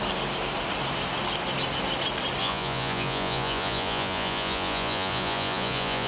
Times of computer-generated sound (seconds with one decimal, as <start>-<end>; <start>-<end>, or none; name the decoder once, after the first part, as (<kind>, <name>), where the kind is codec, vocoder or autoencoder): 2.4-6.1 (vocoder, Vocos)